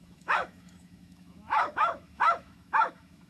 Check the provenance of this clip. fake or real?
fake